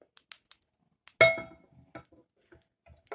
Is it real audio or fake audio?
real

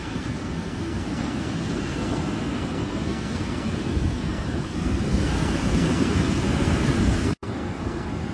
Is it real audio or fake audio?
fake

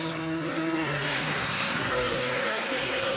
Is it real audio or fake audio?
fake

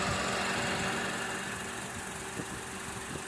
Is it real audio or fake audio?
real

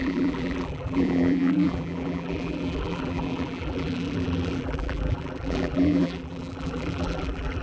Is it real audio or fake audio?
fake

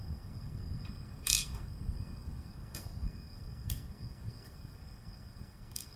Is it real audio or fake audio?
fake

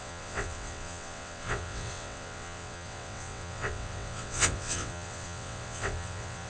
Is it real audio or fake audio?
fake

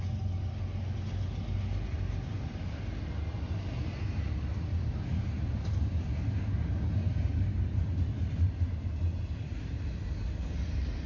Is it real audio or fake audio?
real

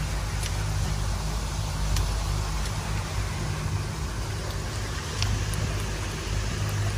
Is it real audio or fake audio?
real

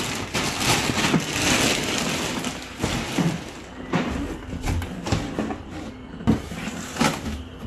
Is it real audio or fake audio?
real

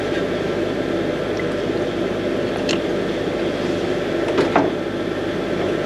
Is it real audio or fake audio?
real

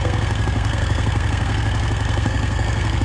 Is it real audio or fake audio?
fake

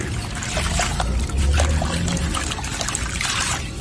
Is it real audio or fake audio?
real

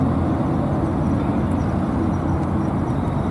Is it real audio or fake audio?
real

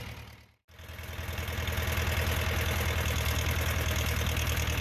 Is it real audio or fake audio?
real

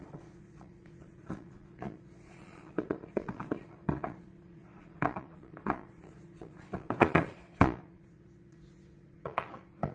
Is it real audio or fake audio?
fake